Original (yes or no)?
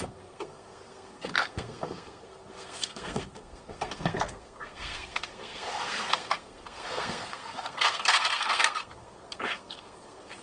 no